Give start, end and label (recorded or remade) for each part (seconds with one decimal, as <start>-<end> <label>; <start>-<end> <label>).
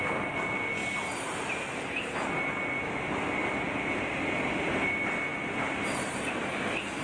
0.0-7.0 recorded